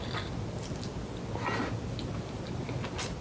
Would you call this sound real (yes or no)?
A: yes